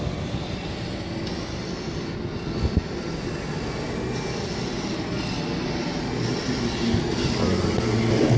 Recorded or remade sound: recorded